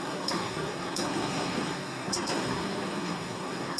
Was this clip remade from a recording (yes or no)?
yes